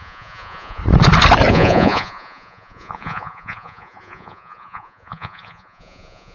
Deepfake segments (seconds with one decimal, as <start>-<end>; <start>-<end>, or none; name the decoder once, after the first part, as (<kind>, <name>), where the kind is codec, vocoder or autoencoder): 0.0-0.8 (vocoder, Vocos); 1.5-6.3